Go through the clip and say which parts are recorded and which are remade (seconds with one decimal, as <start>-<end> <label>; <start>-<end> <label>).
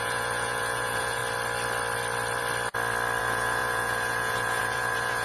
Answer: 0.0-1.2 remade; 1.2-3.2 recorded; 3.2-5.2 remade